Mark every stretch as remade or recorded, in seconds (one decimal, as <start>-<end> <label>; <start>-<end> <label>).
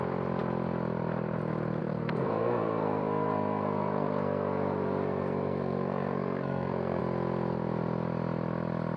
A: 0.0-1.8 recorded; 1.8-7.0 remade; 7.0-9.0 recorded